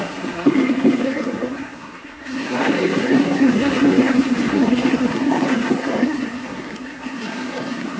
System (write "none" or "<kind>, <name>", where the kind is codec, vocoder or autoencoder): codec, SNAC